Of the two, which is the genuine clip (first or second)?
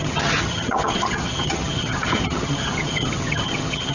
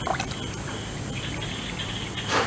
second